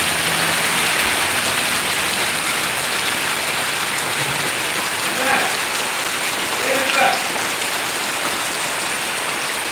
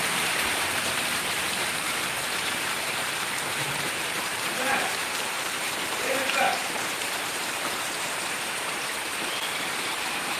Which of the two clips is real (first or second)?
first